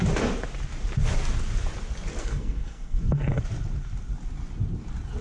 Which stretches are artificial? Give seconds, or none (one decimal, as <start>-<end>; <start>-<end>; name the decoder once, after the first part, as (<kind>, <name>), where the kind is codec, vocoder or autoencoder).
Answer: 2.2-3.4 (codec, SNAC)